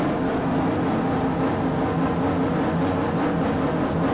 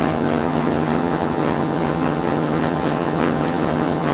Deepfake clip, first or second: second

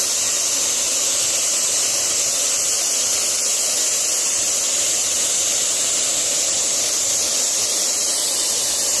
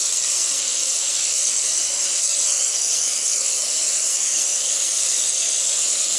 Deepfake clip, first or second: second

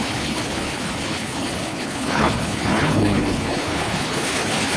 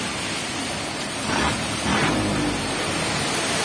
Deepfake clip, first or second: first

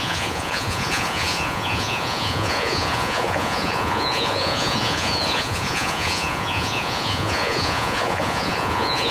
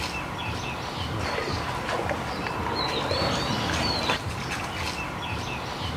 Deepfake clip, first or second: first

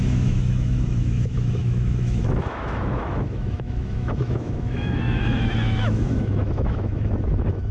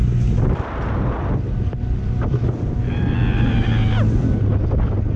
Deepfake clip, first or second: first